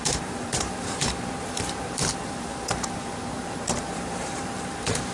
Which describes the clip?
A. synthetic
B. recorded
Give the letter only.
A